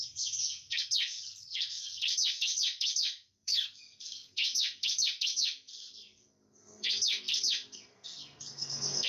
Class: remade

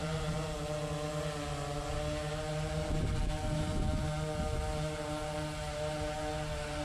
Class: recorded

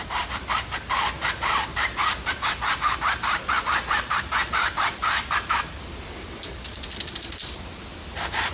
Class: recorded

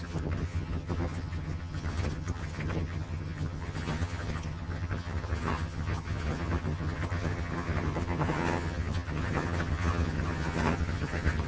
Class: remade